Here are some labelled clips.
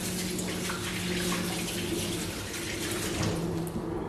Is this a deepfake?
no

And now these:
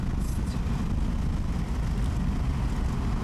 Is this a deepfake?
no